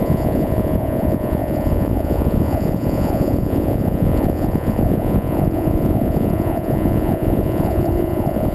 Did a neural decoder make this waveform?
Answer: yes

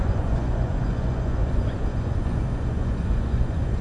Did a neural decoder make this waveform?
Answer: yes